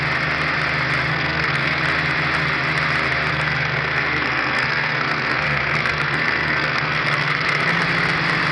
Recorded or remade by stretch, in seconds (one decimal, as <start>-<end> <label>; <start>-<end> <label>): 0.0-1.1 recorded; 1.1-1.8 remade; 1.8-3.3 recorded; 3.3-7.8 remade; 7.8-8.5 recorded